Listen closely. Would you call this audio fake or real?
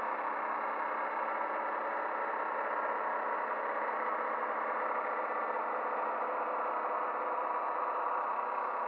real